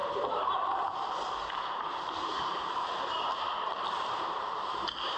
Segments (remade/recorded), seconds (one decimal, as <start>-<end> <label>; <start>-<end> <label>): 0.0-5.2 remade